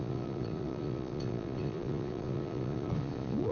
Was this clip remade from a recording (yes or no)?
yes